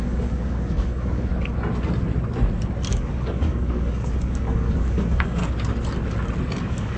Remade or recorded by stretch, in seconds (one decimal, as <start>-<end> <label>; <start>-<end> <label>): 0.0-1.3 remade; 1.3-2.9 recorded; 2.9-5.4 remade; 5.4-6.6 recorded; 6.6-7.0 remade